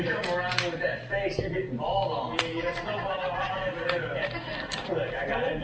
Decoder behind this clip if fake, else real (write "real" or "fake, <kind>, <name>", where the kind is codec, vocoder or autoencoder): fake, vocoder, BigVGAN v2